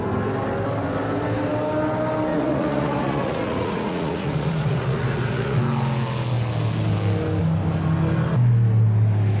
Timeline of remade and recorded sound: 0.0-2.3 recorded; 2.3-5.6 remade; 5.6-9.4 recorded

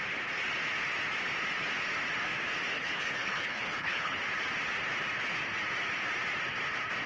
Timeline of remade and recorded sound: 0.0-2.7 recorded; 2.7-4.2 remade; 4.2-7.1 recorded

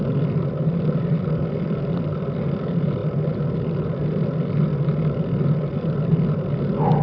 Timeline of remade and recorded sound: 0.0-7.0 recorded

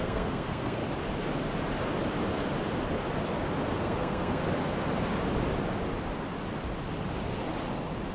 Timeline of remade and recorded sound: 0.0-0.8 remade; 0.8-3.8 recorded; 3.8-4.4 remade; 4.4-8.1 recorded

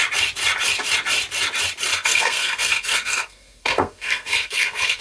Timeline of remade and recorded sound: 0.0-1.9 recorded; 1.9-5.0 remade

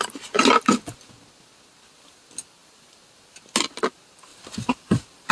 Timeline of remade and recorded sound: 0.0-4.3 recorded; 4.3-5.3 remade

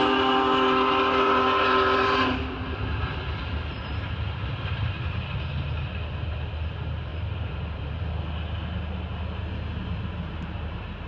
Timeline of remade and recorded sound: 0.0-3.7 recorded; 3.7-5.2 remade; 5.2-7.1 recorded; 7.1-8.0 remade; 8.0-11.1 recorded